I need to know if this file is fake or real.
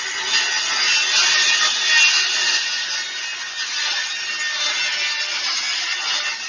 real